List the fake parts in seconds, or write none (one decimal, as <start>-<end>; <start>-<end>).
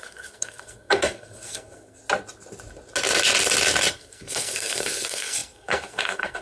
0.0-2.0; 3.9-6.4